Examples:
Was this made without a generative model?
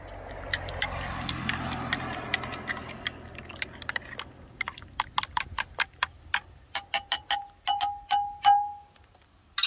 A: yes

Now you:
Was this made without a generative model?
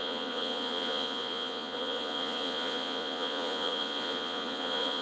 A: no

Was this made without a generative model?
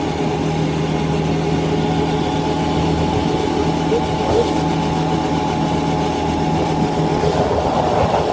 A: yes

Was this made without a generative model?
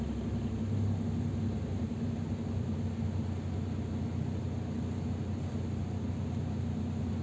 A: yes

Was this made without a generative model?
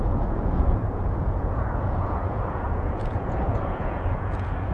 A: no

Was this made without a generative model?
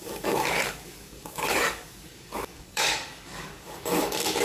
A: no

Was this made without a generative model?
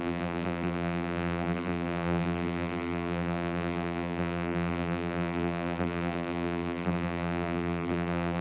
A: no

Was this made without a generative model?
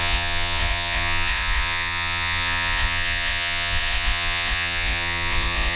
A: no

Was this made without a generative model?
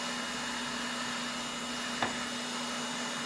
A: yes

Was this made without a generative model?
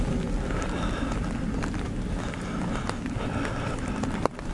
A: yes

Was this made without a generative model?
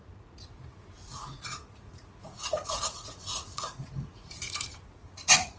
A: no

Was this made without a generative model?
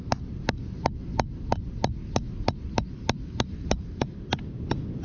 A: yes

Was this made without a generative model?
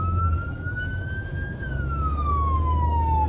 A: no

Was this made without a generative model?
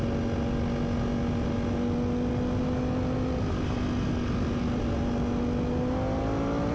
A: yes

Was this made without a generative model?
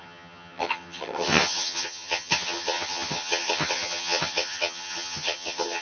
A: no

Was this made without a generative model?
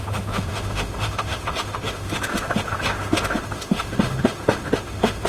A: no